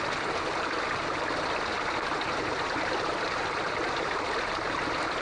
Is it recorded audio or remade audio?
recorded